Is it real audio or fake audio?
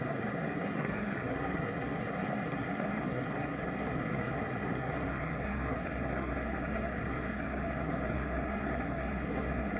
fake